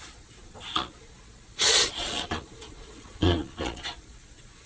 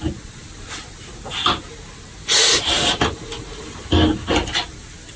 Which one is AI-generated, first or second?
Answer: first